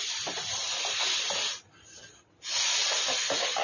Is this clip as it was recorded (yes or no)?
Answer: yes